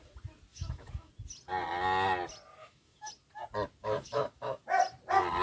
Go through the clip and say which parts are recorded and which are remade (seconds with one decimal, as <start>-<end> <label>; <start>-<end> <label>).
0.0-0.5 recorded; 0.5-1.1 remade; 1.1-2.6 recorded; 2.6-3.1 remade; 3.1-3.8 recorded; 3.8-4.6 remade; 4.6-5.4 recorded